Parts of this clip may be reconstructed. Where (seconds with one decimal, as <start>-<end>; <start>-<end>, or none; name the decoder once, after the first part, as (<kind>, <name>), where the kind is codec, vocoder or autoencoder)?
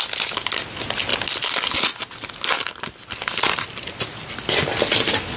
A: none